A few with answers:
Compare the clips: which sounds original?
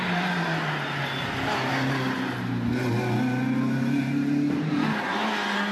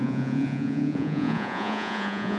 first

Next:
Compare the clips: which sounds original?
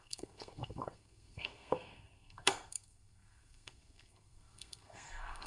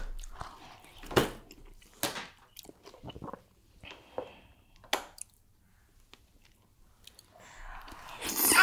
second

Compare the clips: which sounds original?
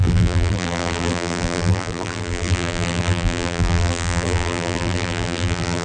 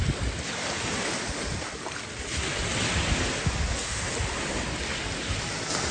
second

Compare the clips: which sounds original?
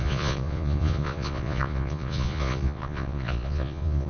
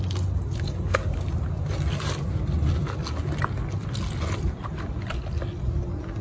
second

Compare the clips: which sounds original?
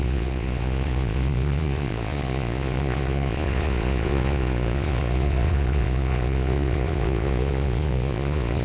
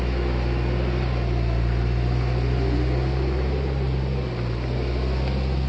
second